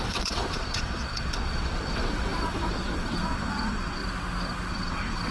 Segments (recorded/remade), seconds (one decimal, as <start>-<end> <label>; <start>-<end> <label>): 0.0-4.0 remade; 4.0-4.7 recorded; 4.7-5.3 remade